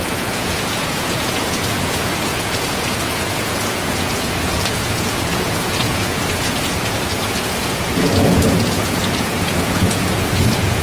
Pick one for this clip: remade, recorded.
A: remade